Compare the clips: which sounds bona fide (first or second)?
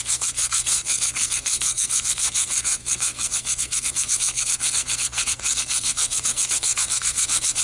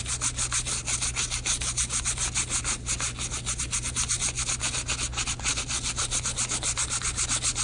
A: second